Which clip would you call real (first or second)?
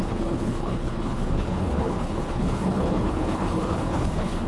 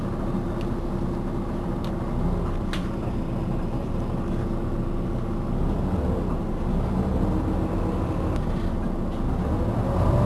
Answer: second